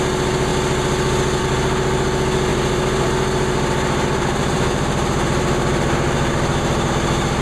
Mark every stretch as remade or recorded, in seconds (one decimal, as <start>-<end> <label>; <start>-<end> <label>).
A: 0.0-2.5 recorded; 2.5-6.9 remade; 6.9-7.4 recorded